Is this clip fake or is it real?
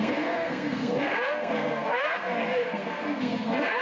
fake